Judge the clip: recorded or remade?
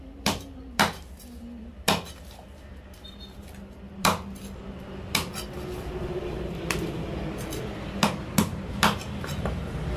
remade